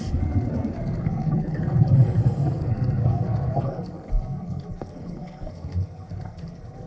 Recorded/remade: remade